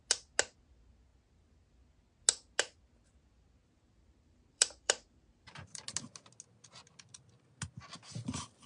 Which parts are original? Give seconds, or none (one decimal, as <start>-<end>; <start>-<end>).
0.0-3.6; 5.8-8.7